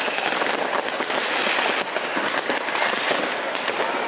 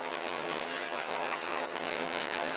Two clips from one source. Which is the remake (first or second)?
second